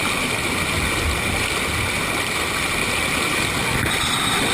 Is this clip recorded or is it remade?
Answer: recorded